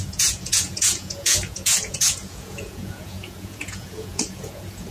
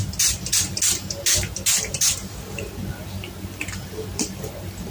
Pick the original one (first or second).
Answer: second